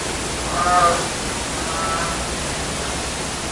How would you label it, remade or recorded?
recorded